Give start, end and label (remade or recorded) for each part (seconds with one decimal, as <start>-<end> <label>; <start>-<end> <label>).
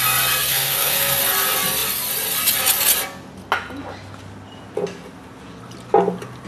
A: 0.0-0.4 recorded; 0.4-1.2 remade; 1.2-6.5 recorded